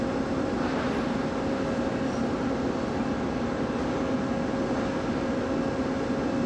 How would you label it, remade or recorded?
recorded